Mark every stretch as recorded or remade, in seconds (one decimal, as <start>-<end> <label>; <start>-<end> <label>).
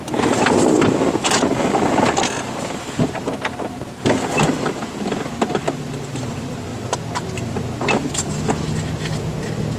0.0-9.8 recorded